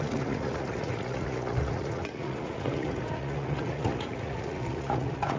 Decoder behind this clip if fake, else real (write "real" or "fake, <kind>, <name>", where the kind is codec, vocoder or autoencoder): fake, vocoder, Vocos